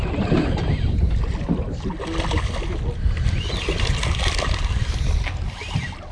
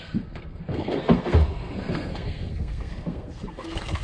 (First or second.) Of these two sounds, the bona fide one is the first